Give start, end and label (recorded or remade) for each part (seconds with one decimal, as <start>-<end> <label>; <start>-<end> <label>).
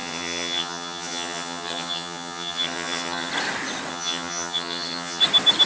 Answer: 0.0-3.3 remade; 3.3-3.9 recorded; 3.9-5.2 remade; 5.2-5.7 recorded